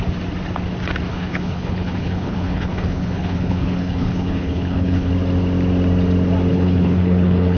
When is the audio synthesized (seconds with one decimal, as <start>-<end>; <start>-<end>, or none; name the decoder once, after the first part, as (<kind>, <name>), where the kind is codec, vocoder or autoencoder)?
1.1-5.1 (codec, HILCodec); 6.5-7.6